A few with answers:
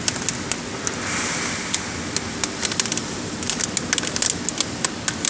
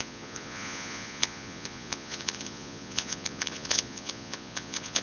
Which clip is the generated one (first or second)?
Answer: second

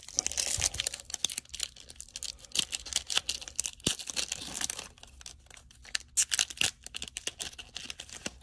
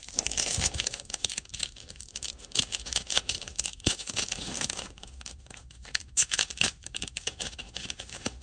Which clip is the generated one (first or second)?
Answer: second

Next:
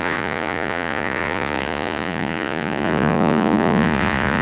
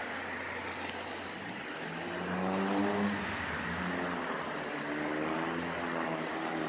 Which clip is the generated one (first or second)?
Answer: first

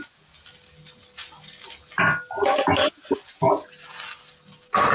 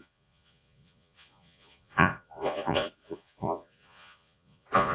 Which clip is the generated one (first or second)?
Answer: second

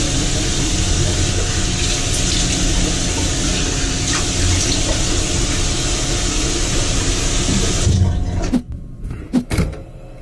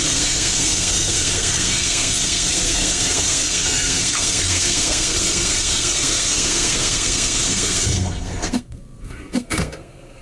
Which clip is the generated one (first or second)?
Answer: second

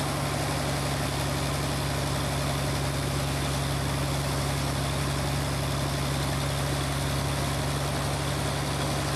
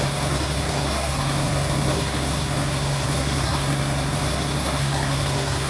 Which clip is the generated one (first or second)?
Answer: second